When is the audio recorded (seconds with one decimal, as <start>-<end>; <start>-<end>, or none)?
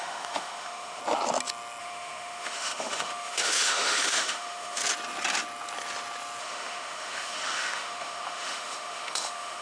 1.0-1.8; 4.8-6.4